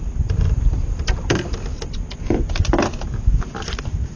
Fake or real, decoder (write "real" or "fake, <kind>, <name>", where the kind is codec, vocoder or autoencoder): real